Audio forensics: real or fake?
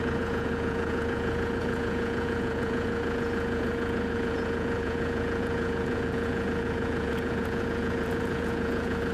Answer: fake